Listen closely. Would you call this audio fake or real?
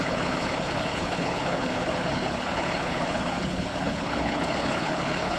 fake